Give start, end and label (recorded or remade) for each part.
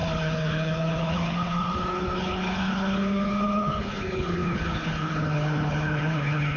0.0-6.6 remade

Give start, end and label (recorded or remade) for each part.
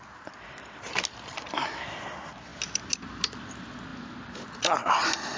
0.0-5.4 recorded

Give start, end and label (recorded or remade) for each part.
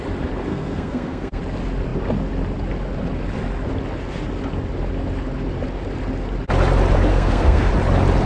0.0-0.5 recorded; 0.5-1.4 remade; 1.4-7.1 recorded; 7.1-7.7 remade; 7.7-8.3 recorded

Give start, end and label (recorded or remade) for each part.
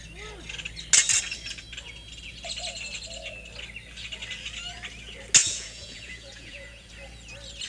0.0-5.4 recorded; 5.4-6.9 remade; 6.9-7.7 recorded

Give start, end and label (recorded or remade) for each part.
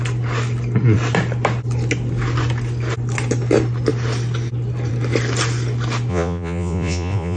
0.0-6.1 recorded; 6.1-7.4 remade